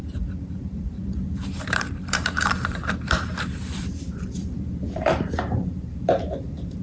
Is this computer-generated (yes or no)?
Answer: yes